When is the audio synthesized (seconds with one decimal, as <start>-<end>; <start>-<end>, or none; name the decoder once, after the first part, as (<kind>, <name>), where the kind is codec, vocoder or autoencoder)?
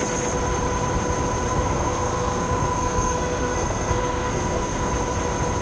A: 1.5-4.9 (codec, SNAC)